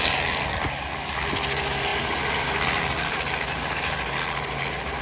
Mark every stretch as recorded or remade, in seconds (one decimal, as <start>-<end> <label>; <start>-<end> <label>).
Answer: 0.0-5.0 recorded